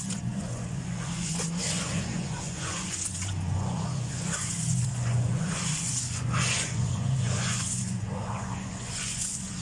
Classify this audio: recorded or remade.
remade